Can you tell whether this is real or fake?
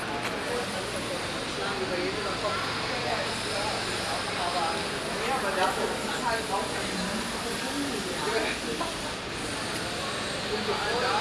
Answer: real